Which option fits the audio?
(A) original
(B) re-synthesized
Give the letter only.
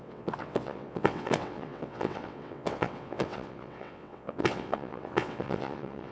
B